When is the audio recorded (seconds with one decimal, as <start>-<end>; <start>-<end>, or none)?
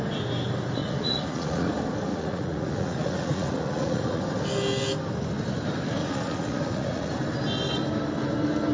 0.0-0.8; 1.7-2.1; 4.2-6.0; 7.1-8.7